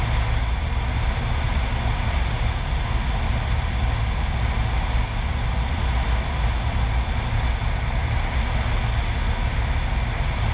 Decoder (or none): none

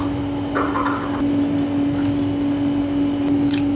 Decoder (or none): none